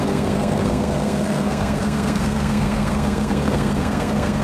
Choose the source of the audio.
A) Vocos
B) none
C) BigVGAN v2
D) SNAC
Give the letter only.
D